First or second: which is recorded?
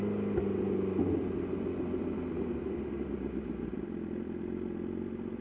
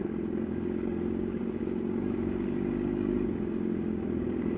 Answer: first